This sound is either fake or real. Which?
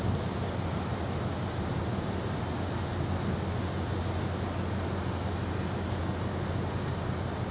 real